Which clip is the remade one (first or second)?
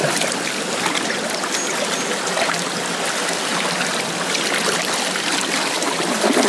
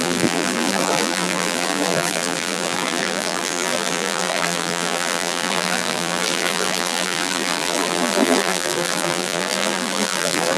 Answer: second